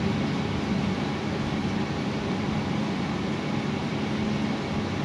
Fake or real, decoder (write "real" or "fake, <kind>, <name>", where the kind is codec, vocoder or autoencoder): real